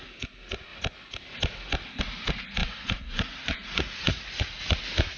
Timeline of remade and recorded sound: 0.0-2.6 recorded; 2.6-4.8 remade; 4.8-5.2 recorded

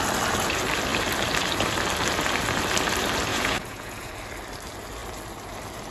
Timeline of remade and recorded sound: 0.0-3.3 recorded; 3.3-4.1 remade; 4.1-5.9 recorded

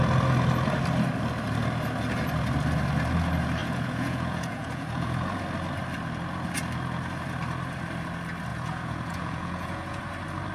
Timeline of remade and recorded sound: 0.0-3.6 recorded; 3.6-5.4 remade; 5.4-8.5 recorded; 8.5-10.1 remade; 10.1-10.5 recorded

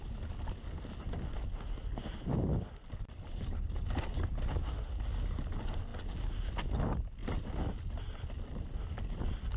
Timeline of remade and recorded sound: 0.0-9.6 recorded

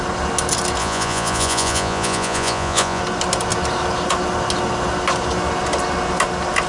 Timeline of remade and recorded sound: 0.0-0.8 recorded; 0.8-3.0 remade; 3.0-6.7 recorded

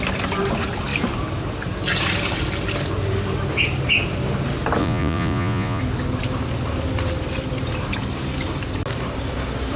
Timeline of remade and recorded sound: 0.0-4.8 recorded; 4.8-5.8 remade; 5.8-9.8 recorded

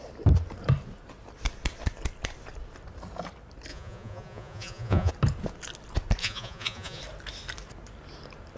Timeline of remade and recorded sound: 0.0-3.7 recorded; 3.7-5.1 remade; 5.1-6.2 recorded; 6.2-7.0 remade; 7.0-8.6 recorded

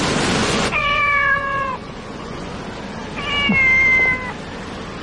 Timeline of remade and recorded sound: 0.0-0.4 recorded; 0.4-2.5 remade; 2.5-5.0 recorded